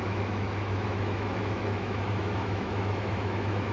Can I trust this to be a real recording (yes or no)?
no